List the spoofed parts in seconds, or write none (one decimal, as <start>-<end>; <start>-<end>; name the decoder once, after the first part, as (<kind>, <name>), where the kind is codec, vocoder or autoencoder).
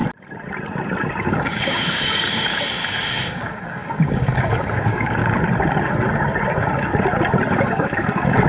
1.2-5.2 (codec, DAC); 6.5-6.9; 7.6-8.5